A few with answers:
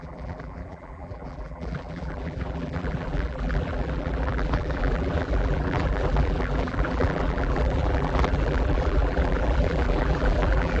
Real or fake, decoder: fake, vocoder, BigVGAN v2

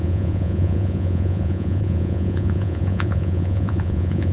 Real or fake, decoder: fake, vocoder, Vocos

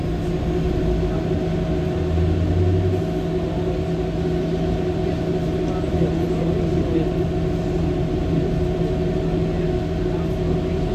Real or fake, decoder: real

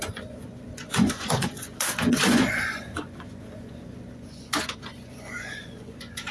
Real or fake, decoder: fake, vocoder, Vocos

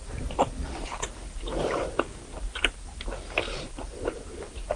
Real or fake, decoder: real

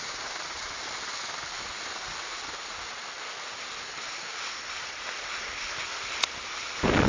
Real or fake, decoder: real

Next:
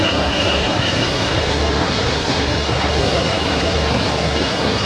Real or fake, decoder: fake, codec, SNAC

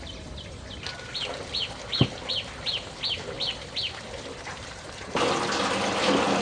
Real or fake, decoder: real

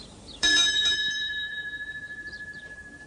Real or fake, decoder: fake, vocoder, BigVGAN v2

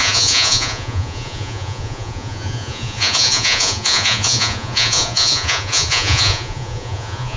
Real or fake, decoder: fake, vocoder, Vocos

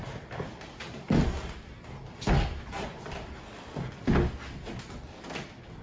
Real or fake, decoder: real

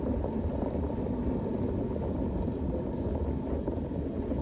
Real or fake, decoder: real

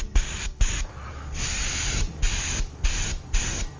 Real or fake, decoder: real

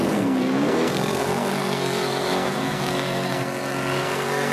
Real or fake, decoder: fake, codec, SNAC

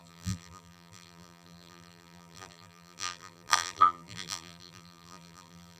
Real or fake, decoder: fake, vocoder, BigVGAN v2